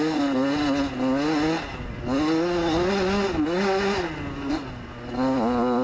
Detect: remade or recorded recorded